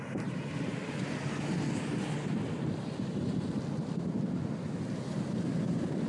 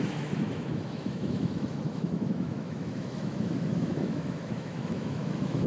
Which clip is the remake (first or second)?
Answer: second